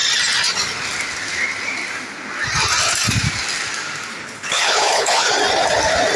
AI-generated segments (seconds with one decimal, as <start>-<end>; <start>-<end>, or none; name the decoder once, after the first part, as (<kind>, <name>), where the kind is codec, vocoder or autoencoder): 4.1-5.3 (codec, HILCodec)